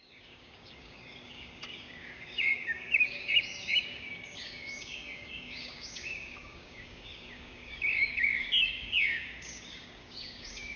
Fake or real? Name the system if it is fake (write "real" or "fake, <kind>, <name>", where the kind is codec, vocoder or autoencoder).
fake, codec, DAC